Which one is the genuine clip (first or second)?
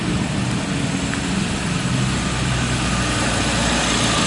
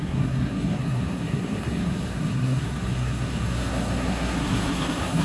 first